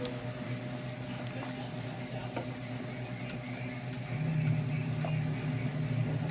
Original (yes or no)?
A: yes